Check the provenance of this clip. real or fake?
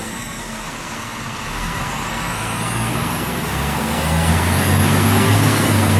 fake